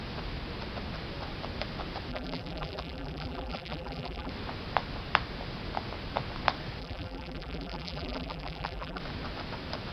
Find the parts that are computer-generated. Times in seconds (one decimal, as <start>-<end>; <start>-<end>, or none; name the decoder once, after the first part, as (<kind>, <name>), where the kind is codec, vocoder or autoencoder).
2.1-4.3 (vocoder, BigVGAN v2); 6.8-9.0